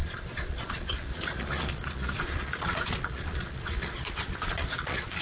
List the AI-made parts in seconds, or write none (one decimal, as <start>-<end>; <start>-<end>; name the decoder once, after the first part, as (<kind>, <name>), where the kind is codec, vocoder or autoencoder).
0.0-5.2 (vocoder, Vocos)